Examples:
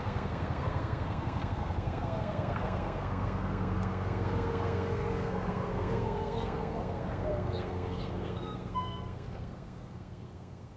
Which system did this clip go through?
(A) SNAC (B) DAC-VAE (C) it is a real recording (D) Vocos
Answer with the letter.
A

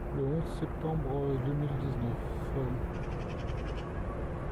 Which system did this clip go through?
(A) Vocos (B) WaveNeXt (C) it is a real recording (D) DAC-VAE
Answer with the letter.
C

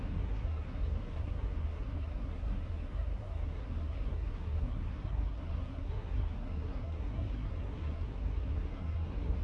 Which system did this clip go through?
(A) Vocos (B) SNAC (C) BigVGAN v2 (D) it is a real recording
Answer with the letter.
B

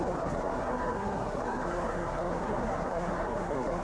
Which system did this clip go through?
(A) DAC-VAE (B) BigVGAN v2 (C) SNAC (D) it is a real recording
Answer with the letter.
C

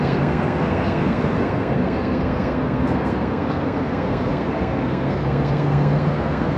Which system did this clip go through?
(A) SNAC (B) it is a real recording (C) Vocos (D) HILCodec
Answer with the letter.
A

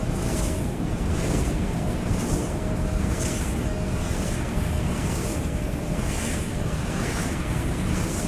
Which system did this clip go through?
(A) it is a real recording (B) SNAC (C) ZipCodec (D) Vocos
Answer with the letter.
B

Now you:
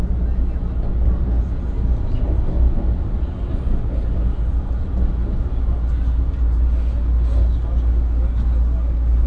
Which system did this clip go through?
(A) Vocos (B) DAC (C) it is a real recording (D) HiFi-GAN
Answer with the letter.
C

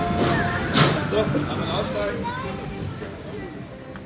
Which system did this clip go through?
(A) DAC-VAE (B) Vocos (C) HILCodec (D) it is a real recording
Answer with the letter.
D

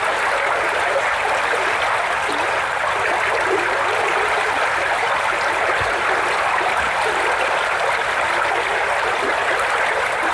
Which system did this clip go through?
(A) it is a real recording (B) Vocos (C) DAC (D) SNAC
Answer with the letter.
A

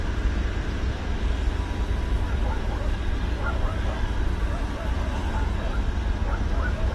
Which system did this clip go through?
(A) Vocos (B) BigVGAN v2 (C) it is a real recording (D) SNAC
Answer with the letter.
B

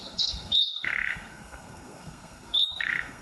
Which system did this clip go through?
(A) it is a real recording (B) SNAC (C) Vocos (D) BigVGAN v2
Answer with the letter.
B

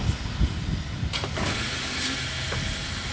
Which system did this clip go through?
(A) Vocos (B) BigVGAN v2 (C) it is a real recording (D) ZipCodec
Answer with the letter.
C